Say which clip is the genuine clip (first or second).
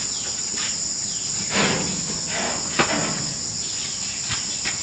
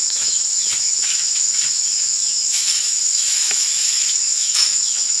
first